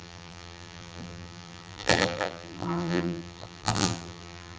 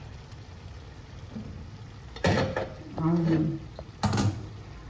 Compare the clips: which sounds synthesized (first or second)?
first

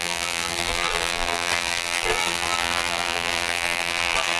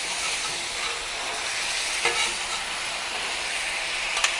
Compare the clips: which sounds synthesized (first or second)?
first